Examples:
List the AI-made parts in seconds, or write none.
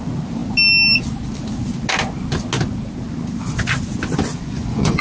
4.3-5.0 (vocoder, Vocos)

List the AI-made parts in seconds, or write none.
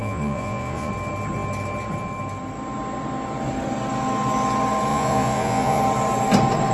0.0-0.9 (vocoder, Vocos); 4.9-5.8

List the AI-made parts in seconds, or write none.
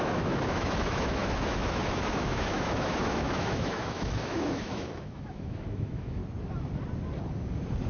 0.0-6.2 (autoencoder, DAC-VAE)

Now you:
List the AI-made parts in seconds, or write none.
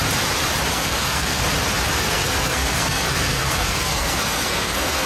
0.7-1.4 (codec, SNAC); 2.0-5.1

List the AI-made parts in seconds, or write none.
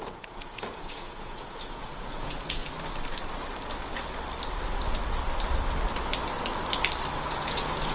0.0-2.6 (vocoder, Vocos); 7.3-7.9